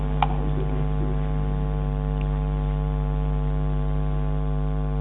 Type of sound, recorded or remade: recorded